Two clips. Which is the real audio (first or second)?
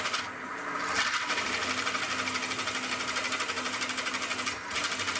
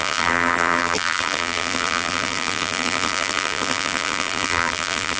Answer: first